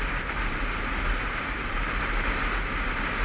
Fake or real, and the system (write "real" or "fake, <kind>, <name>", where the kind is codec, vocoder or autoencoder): fake, vocoder, BigVGAN v2